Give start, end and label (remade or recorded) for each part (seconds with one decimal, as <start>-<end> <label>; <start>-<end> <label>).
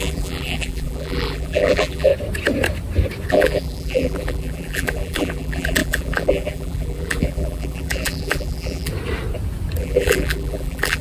0.0-2.1 remade; 2.1-3.3 recorded; 3.3-8.9 remade; 8.9-9.8 recorded; 9.8-11.0 remade